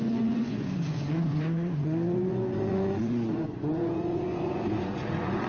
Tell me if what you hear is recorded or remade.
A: remade